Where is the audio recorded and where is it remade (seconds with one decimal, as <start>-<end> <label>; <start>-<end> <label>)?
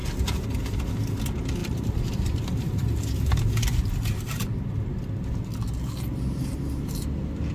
0.0-1.6 recorded; 1.6-3.0 remade; 3.0-7.5 recorded